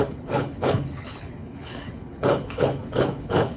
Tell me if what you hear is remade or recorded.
remade